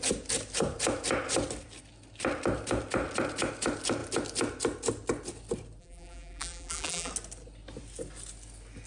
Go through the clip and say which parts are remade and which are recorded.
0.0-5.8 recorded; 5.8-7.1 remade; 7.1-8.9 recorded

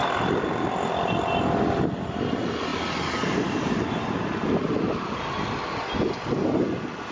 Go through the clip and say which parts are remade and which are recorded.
0.0-7.1 recorded